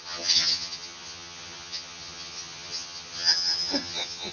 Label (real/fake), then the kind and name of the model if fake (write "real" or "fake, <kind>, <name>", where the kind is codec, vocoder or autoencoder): fake, vocoder, HiFi-GAN